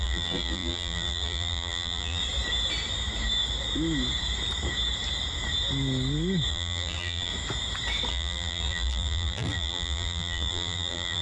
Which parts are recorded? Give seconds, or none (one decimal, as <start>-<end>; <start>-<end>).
2.2-6.5; 7.3-8.1